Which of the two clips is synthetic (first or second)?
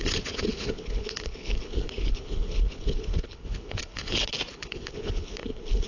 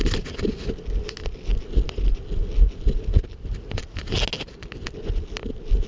first